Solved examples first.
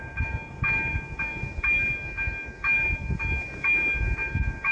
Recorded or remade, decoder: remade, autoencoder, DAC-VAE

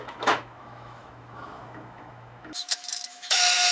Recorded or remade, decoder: remade, autoencoder, DAC-VAE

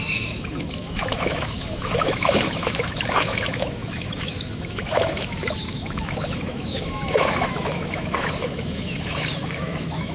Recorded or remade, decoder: remade, autoencoder, DAC-VAE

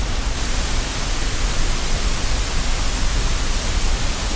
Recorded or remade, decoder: recorded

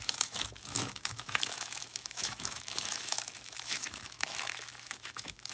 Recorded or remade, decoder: remade, autoencoder, DAC-VAE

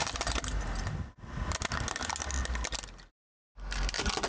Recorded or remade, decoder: recorded